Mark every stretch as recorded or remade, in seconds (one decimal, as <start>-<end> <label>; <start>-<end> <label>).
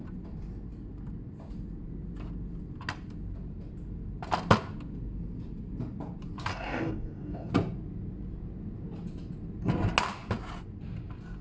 0.0-6.5 recorded; 6.5-7.5 remade; 7.5-11.4 recorded